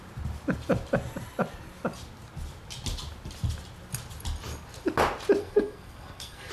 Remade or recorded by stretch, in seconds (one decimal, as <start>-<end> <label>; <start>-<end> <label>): 0.0-5.4 recorded; 5.4-6.5 remade